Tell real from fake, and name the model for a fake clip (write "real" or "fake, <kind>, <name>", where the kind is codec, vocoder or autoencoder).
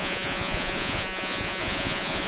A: fake, vocoder, Vocos